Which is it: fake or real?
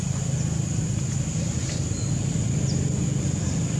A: real